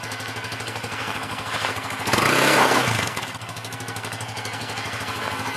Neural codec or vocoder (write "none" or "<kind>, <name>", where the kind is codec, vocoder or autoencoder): codec, SNAC